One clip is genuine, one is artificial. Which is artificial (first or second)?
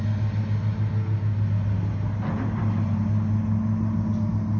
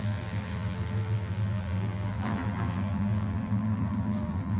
second